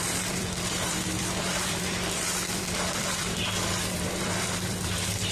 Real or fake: fake